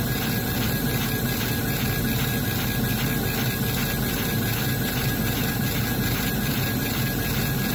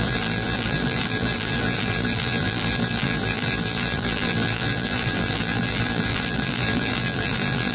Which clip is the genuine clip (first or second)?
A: first